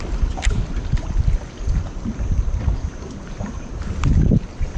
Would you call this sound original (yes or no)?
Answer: yes